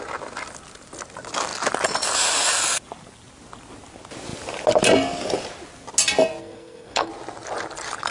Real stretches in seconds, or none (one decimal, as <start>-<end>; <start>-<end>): 0.0-6.4; 7.1-8.1

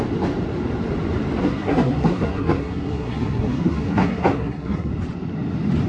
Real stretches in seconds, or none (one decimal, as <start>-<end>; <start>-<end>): 0.0-1.4; 4.9-5.9

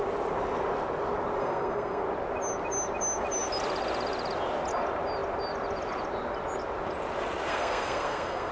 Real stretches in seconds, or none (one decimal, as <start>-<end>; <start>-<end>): 0.0-1.4; 2.0-7.5

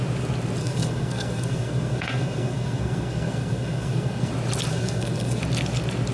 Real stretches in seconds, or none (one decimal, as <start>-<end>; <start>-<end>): 0.0-0.6; 4.3-4.7; 5.4-6.1

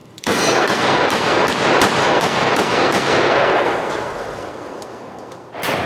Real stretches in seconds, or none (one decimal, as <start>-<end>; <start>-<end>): 1.5-2.0; 5.5-5.9

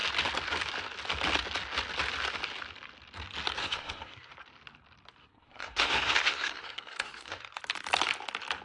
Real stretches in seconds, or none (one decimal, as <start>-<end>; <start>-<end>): 0.0-3.6; 4.3-5.2; 7.6-8.6